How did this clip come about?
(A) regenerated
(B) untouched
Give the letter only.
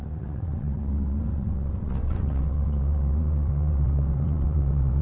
A